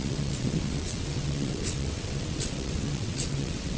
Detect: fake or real fake